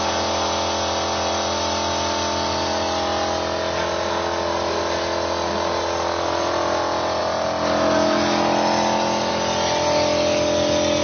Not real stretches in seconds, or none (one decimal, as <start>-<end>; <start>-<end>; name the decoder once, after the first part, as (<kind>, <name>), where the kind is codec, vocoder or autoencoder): none